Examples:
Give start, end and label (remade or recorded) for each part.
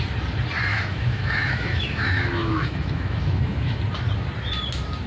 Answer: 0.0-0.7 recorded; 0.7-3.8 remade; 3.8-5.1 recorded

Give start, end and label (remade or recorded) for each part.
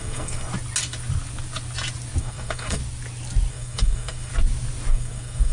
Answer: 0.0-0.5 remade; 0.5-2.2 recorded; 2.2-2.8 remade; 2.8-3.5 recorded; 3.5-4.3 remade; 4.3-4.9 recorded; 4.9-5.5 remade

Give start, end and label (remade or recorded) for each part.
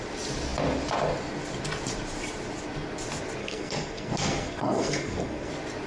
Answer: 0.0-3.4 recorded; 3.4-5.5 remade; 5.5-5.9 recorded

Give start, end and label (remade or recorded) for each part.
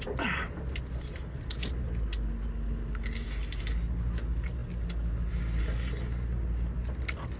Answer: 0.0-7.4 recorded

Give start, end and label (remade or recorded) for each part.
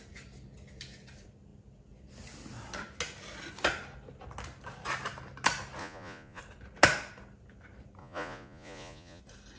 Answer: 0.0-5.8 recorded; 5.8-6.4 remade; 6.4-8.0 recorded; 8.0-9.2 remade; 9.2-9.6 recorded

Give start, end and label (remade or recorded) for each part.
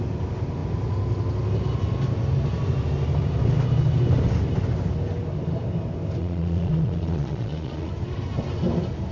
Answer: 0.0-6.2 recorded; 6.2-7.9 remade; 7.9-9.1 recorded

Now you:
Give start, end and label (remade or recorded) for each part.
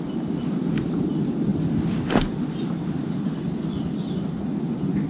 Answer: 0.0-5.1 recorded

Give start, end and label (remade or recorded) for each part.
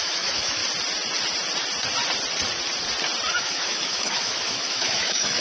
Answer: 0.0-0.6 remade; 0.6-3.4 recorded; 3.4-5.4 remade